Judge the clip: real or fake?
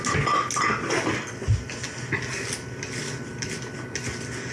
real